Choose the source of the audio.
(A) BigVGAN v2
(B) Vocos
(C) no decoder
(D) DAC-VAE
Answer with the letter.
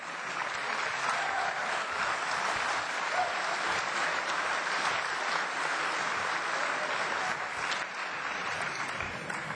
C